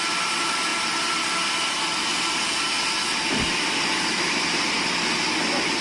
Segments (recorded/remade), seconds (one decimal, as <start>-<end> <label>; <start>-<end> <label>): 0.0-5.8 recorded

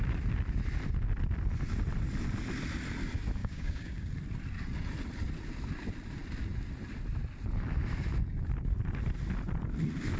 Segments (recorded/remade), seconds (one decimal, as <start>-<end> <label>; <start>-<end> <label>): 0.0-3.4 recorded; 3.4-4.1 remade; 4.1-10.2 recorded

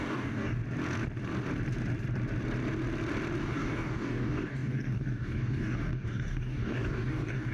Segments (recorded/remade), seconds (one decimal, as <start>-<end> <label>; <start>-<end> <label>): 0.0-0.6 remade; 0.6-3.4 recorded; 3.4-7.5 remade

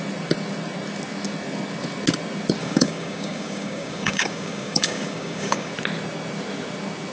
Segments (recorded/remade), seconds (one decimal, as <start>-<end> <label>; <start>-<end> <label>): 0.0-2.6 recorded; 2.6-5.7 remade; 5.7-7.1 recorded

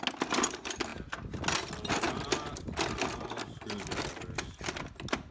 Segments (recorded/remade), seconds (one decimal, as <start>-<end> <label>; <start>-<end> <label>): 0.0-5.3 recorded

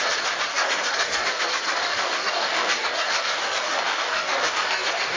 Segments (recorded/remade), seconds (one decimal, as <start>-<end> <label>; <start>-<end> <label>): 0.0-0.5 recorded; 0.5-1.4 remade; 1.4-1.8 recorded; 1.8-5.2 remade

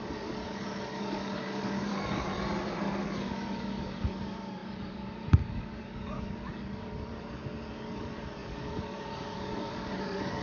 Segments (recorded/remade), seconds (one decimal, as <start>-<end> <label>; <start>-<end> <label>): 0.0-2.3 remade; 2.3-2.8 recorded; 2.8-10.4 remade

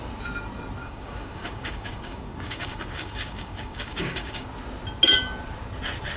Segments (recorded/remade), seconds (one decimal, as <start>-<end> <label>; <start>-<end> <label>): 0.0-0.8 recorded; 0.8-4.5 remade; 4.5-6.2 recorded